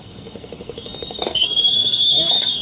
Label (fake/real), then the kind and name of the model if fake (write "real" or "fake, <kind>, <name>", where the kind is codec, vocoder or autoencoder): fake, codec, SNAC